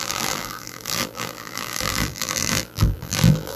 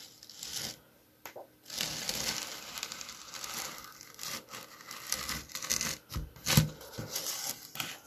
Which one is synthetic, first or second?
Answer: first